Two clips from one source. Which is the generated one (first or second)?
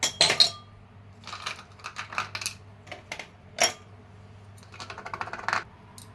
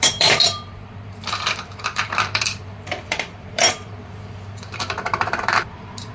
second